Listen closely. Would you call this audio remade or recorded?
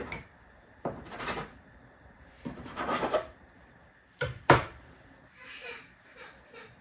remade